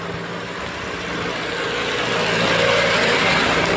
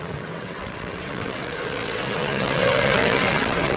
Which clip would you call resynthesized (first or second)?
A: second